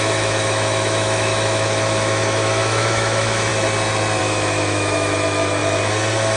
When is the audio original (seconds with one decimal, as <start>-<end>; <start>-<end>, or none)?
3.5-4.2; 5.6-6.4